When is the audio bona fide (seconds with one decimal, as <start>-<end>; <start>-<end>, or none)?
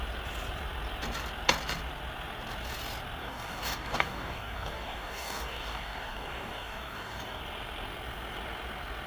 0.0-3.2; 7.4-9.1